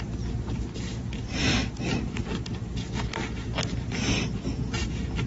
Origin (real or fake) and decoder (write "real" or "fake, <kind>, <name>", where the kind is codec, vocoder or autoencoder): real